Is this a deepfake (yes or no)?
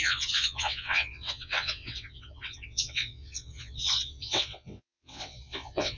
yes